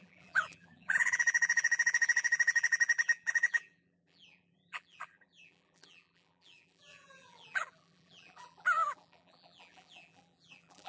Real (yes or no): no